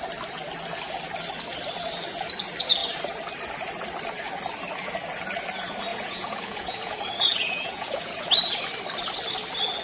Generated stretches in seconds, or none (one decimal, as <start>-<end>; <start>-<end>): 5.9-8.3